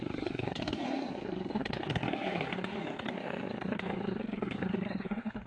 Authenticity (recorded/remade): remade